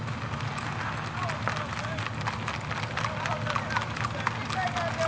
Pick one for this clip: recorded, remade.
recorded